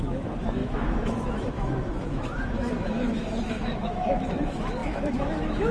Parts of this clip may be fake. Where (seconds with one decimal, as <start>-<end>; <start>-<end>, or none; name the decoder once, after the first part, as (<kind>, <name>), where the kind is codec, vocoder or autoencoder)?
0.0-5.7 (autoencoder, DAC-VAE)